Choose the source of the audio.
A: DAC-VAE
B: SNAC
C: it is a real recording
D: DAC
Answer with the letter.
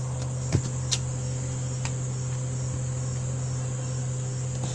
C